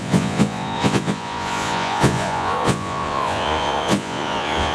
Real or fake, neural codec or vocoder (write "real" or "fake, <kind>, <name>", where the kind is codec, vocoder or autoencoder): fake, vocoder, Vocos